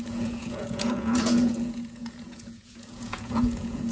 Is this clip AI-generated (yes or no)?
yes